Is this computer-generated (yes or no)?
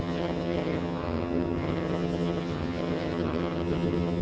yes